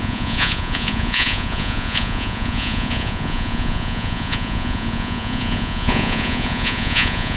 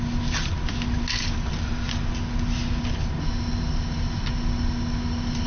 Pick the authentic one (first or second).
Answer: second